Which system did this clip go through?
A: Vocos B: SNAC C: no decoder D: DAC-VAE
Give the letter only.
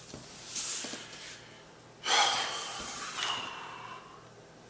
C